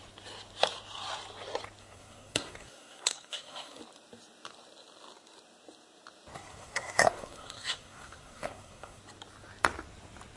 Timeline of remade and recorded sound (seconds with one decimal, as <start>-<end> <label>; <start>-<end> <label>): 0.0-1.8 recorded; 1.8-3.8 remade; 3.8-6.5 recorded; 6.5-9.0 remade; 9.0-10.4 recorded